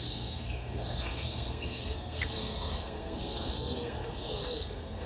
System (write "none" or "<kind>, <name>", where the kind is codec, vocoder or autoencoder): codec, SNAC